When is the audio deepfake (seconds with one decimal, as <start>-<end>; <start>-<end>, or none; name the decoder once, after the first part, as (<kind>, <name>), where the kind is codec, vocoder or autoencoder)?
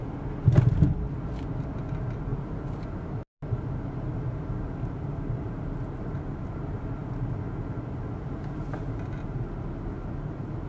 none